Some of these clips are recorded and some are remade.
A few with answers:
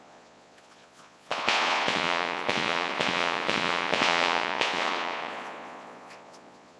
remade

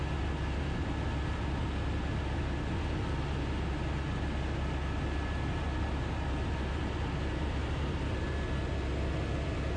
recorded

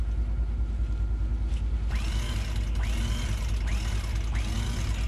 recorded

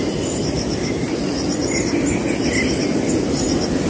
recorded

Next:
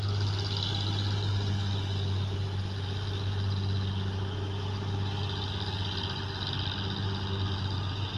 recorded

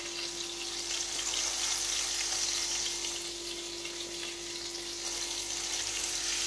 recorded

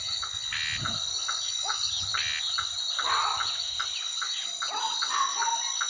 recorded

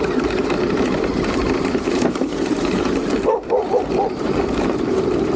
remade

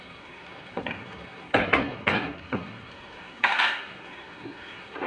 remade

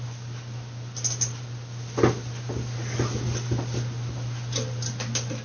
recorded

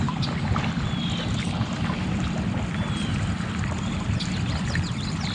recorded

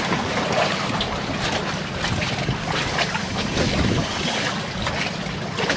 recorded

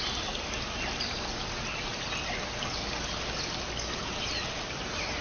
recorded